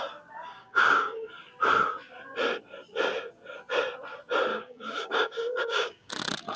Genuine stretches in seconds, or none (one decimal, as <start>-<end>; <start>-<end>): 0.0-0.6; 1.3-4.5; 6.1-6.6